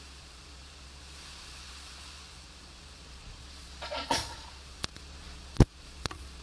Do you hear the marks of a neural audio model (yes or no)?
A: yes